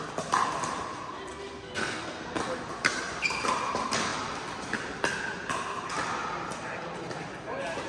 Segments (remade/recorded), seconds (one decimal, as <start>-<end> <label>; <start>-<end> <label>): 0.0-1.3 recorded; 1.3-2.4 remade; 2.4-7.9 recorded